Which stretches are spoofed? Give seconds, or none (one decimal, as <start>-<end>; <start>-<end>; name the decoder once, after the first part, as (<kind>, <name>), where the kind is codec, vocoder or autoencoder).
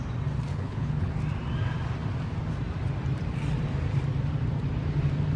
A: 0.5-1.1 (codec, HILCodec)